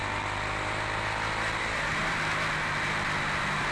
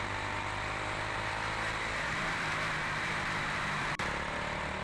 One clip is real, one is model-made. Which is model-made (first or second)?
second